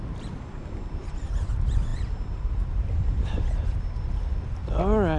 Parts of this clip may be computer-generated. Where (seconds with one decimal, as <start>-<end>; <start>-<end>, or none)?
none